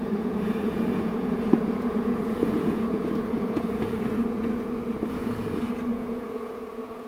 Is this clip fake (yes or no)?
yes